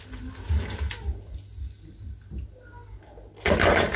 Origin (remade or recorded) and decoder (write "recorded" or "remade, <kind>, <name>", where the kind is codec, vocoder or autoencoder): recorded